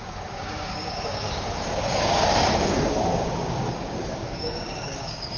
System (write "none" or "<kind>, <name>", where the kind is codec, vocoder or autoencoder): codec, DAC